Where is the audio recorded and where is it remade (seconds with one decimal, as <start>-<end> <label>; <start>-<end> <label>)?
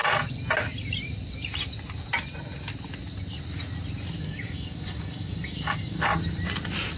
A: 0.0-4.2 recorded; 4.2-6.1 remade; 6.1-7.0 recorded